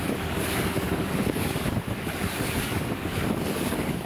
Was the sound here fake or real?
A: fake